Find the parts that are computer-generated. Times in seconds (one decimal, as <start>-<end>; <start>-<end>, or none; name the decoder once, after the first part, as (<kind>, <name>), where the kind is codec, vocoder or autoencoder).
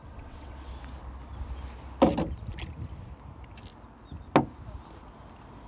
0.0-0.7 (vocoder, WaveNeXt)